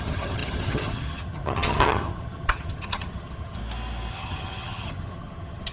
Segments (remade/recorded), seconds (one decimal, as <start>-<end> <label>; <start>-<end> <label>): 0.0-3.6 remade; 3.6-4.1 recorded; 4.1-5.7 remade